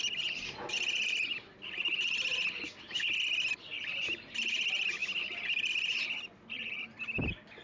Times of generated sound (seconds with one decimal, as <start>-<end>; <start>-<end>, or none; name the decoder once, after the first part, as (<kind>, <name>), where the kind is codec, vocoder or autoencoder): none